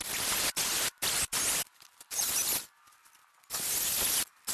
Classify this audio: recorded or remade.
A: recorded